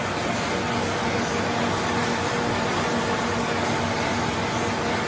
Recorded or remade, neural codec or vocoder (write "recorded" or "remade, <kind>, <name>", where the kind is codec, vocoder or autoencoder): recorded